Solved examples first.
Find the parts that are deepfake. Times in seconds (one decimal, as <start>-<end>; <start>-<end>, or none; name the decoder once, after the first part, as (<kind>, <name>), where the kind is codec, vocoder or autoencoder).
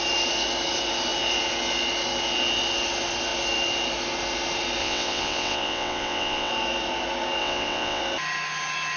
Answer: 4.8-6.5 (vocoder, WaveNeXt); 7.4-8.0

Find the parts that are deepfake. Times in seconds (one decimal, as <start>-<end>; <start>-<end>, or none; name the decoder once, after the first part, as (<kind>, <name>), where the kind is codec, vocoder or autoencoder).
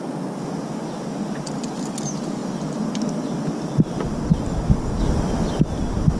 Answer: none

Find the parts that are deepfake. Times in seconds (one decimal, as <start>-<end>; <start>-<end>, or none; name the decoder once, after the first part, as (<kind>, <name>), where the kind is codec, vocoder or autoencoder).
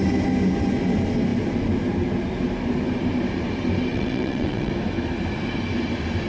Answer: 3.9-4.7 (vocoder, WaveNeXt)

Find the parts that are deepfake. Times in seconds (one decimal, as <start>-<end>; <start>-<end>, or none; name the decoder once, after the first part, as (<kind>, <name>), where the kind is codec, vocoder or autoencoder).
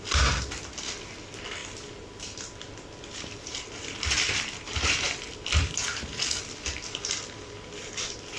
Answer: none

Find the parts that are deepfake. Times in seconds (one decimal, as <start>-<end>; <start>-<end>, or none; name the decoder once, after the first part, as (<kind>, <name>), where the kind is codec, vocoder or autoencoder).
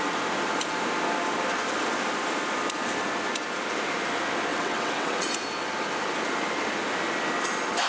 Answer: 4.5-5.3 (vocoder, WaveNeXt)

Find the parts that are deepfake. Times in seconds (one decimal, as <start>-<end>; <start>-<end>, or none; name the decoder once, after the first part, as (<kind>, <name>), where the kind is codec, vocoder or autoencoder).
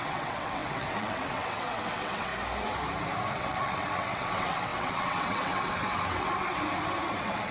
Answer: 0.0-2.3 (vocoder, WaveNeXt); 3.3-6.6; 7.1-7.5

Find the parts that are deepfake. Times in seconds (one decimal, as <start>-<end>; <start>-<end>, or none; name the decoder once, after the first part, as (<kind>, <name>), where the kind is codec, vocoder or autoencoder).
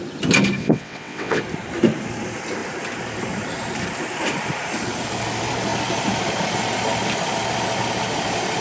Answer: 0.6-1.4 (vocoder, WaveNeXt)